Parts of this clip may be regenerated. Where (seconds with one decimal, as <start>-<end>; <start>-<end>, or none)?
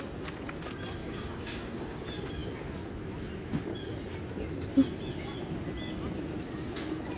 1.0-2.0